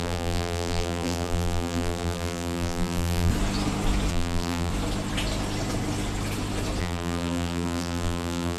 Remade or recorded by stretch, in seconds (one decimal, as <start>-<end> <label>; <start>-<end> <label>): 0.0-3.3 remade; 3.3-4.1 recorded; 4.1-4.7 remade; 4.7-6.8 recorded; 6.8-8.6 remade